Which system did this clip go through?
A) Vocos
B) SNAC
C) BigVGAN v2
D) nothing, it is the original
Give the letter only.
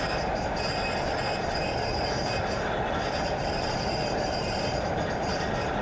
D